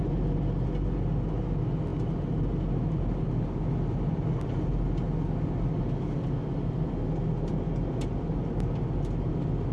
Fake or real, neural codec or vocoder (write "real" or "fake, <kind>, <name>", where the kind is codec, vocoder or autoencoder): real